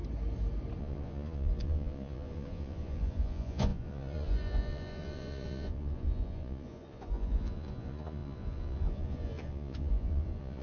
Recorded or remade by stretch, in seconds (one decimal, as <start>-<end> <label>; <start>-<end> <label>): 0.0-0.8 recorded; 0.8-10.6 remade